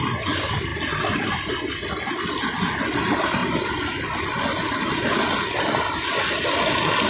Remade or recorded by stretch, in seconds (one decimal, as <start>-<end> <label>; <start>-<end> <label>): 0.0-7.1 recorded